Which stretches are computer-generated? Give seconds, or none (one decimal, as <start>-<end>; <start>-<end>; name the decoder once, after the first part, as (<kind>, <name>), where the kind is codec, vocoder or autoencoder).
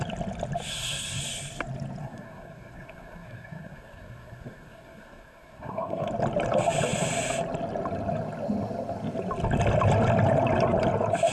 0.7-1.2 (codec, SNAC); 2.0-6.1